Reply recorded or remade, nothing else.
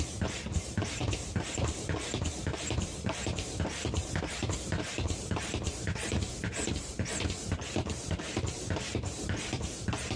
remade